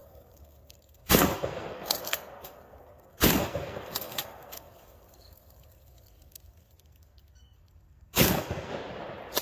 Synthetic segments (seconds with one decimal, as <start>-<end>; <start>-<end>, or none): 0.0-8.7